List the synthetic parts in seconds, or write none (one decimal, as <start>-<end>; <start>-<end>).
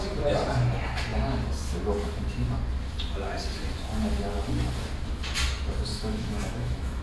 5.9-7.0